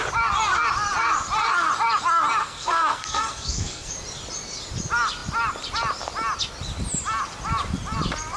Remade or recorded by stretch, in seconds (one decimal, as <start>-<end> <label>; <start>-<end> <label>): 0.0-2.4 recorded; 2.4-3.9 remade; 3.9-8.4 recorded